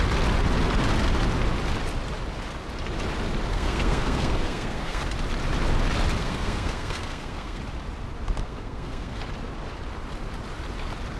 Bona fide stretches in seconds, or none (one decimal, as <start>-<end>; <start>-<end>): 0.0-3.5; 5.0-6.2; 7.6-8.4; 9.2-11.2